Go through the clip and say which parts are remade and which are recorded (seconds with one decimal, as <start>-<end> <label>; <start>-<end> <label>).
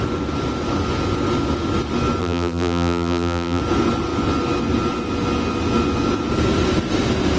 0.0-2.2 recorded; 2.2-3.6 remade; 3.6-7.4 recorded